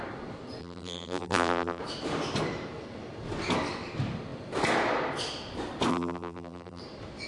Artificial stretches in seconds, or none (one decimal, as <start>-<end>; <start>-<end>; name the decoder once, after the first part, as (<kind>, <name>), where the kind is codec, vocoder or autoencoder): 0.6-1.8 (vocoder, BigVGAN v2); 5.9-6.8

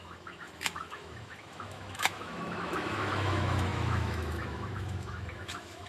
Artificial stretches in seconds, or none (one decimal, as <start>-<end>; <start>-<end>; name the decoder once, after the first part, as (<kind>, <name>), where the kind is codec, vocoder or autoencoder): 0.0-5.9 (autoencoder, DAC-VAE)